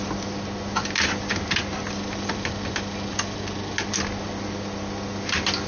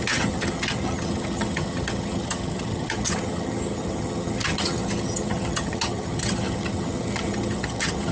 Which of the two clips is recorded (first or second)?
first